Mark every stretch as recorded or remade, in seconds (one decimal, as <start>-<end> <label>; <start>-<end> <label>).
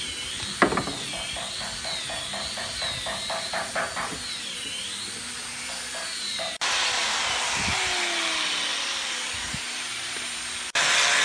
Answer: 0.0-11.2 recorded